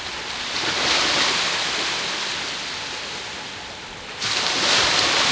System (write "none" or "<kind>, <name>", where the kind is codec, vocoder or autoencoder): none